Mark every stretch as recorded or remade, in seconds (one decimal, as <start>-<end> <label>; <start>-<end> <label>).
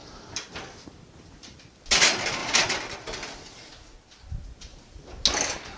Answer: 0.0-2.4 recorded; 2.4-3.7 remade; 3.7-4.7 recorded; 4.7-5.2 remade; 5.2-5.8 recorded